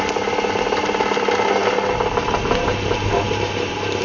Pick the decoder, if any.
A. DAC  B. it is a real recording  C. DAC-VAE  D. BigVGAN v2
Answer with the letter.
B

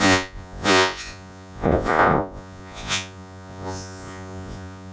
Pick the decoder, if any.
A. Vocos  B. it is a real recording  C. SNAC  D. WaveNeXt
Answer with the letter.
A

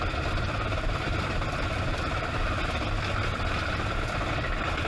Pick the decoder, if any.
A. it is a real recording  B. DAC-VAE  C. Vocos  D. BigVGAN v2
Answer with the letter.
A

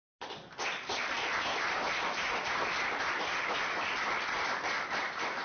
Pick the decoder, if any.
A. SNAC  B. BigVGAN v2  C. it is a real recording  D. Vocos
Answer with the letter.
B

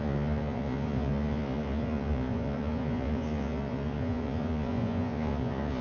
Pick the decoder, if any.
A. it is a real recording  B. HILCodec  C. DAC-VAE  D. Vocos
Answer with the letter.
D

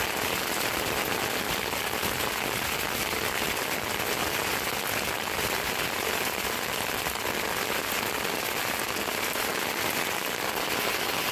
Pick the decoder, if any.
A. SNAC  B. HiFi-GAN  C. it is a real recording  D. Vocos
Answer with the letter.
C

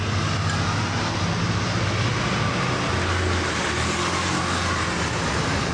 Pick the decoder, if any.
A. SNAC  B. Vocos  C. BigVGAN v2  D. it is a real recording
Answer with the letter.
D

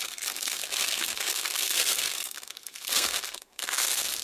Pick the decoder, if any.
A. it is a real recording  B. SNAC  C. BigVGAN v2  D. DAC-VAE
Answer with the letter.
B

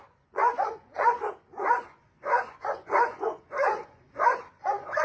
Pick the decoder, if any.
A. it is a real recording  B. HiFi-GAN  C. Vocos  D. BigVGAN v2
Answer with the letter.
C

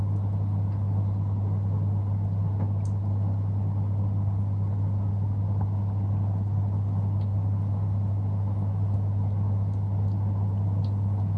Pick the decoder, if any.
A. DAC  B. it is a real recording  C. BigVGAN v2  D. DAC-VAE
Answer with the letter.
B